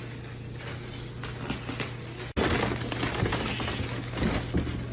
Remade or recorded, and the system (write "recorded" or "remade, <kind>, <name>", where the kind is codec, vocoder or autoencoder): recorded